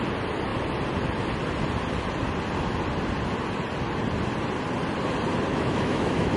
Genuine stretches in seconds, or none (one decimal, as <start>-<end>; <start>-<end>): 0.0-5.5